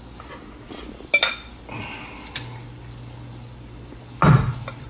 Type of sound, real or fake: real